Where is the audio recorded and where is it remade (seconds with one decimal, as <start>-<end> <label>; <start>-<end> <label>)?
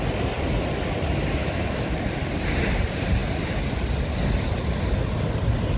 0.0-1.4 recorded; 1.4-1.9 remade; 1.9-5.8 recorded